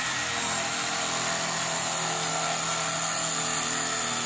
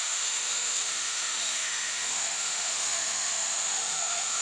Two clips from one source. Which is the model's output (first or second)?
second